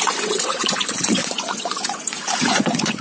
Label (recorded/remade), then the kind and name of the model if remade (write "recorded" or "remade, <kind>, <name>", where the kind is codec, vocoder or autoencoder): remade, vocoder, Vocos